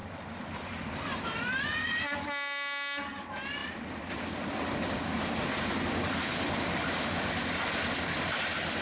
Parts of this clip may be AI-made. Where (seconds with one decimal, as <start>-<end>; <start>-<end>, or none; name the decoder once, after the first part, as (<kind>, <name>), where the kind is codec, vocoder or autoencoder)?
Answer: 0.0-1.9 (vocoder, BigVGAN v2); 3.6-6.2